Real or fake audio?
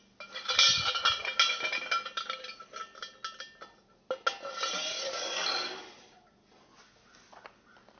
real